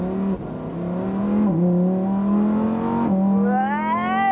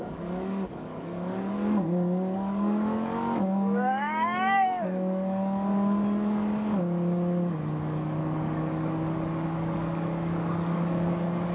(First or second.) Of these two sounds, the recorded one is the first